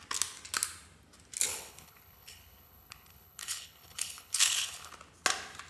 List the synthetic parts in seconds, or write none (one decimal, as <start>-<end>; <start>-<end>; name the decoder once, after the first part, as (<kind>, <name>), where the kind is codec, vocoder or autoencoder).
1.5-4.9 (codec, HILCodec)